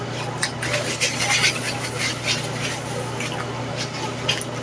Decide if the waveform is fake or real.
real